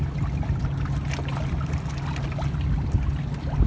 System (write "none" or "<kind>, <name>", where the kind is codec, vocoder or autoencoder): none